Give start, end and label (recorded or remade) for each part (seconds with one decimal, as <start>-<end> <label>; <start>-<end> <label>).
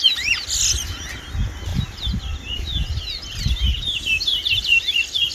0.0-1.7 recorded; 1.7-5.3 remade